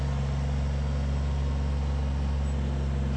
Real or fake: real